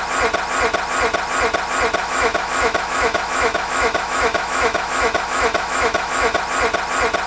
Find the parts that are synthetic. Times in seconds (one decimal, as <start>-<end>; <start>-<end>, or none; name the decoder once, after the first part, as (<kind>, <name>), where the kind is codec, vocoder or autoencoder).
2.0-6.4 (autoencoder, DAC-VAE)